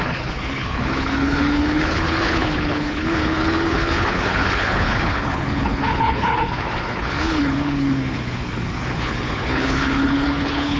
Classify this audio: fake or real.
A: fake